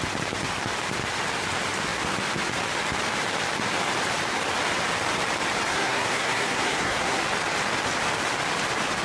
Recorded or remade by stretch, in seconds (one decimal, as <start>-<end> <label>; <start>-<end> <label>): 0.0-5.7 recorded; 5.7-7.2 remade; 7.2-9.0 recorded